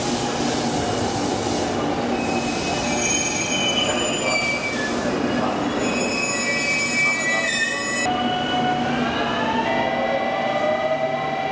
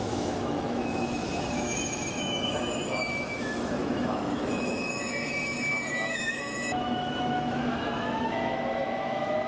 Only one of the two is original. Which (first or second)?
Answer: first